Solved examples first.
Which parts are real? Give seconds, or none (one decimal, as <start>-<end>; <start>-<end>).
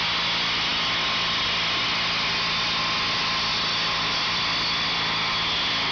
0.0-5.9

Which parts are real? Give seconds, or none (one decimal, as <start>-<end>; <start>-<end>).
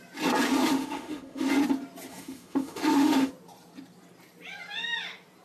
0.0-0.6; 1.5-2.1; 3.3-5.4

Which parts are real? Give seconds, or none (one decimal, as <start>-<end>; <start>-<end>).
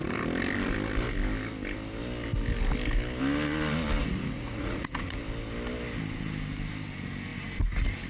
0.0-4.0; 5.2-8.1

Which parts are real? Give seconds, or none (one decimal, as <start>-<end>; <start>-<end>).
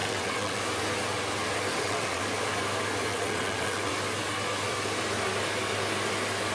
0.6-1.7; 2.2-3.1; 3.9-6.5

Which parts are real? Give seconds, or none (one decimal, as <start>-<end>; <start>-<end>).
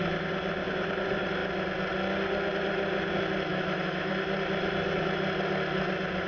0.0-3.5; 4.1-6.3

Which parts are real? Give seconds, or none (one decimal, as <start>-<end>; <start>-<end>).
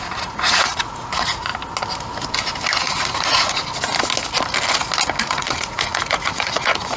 1.5-2.8; 3.6-5.3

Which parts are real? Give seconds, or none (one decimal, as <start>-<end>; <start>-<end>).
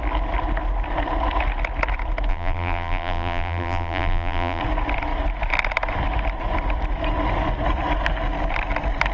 0.0-2.3; 4.6-9.1